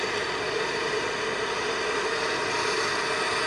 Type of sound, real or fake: real